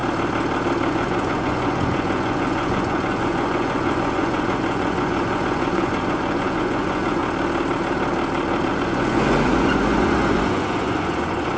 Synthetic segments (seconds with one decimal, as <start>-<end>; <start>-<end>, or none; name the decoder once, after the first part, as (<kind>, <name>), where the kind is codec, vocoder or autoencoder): 0.9-7.2 (vocoder, Vocos); 8.7-11.6